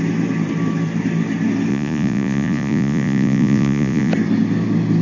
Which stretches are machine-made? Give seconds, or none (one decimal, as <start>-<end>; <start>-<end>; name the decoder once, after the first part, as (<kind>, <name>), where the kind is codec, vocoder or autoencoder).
1.7-4.1 (vocoder, Vocos)